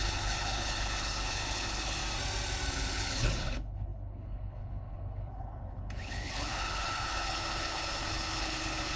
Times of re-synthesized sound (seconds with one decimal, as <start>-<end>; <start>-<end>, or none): 0.0-2.0; 2.7-9.0